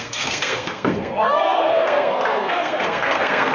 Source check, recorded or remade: remade